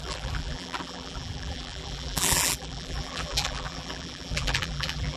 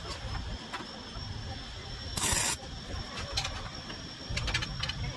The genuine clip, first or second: second